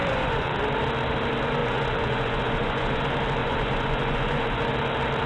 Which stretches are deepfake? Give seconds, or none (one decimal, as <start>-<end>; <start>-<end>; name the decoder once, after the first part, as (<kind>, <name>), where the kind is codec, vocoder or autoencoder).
0.0-0.5 (vocoder, Vocos); 1.6-3.0; 3.4-4.7